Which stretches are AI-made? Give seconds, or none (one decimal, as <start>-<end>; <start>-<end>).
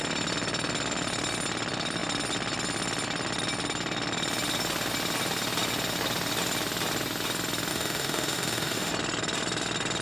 7.7-8.9